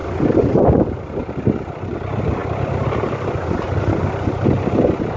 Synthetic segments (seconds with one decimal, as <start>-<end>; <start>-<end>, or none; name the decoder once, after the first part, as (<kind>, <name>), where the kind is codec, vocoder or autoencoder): 0.0-1.7 (vocoder, BigVGAN v2); 2.4-3.4